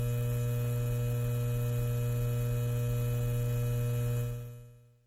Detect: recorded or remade recorded